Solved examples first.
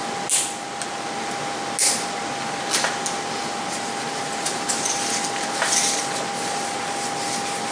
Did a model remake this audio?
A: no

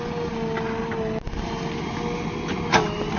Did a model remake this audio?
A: no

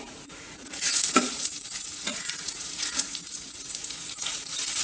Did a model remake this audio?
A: yes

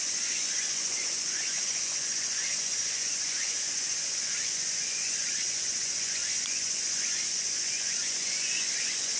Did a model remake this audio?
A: yes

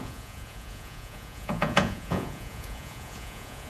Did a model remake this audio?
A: yes